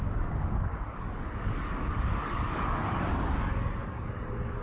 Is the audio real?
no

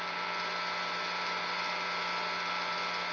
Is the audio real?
yes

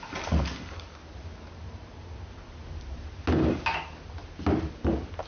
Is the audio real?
yes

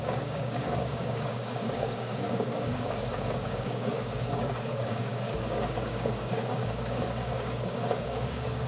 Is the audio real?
no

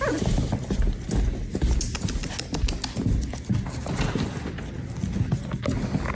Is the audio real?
yes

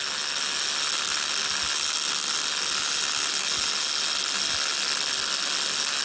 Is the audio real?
yes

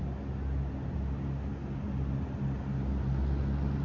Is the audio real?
yes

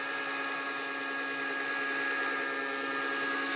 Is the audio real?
yes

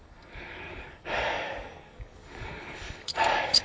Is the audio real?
no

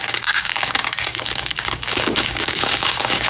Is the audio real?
no